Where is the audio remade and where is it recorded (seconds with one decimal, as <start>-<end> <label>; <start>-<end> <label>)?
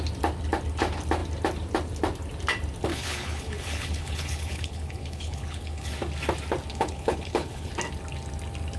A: 0.0-2.9 recorded; 2.9-5.9 remade; 5.9-6.7 recorded; 6.7-7.7 remade; 7.7-8.8 recorded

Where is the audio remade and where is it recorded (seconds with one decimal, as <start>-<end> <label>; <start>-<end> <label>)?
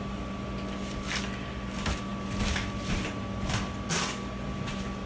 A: 0.0-5.1 recorded